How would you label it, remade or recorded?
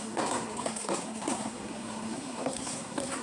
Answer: remade